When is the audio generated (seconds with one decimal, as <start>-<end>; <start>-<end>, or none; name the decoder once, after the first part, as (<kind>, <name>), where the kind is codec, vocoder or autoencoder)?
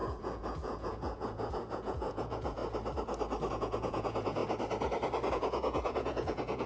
0.0-2.6 (vocoder, Vocos); 3.5-4.4; 5.3-6.7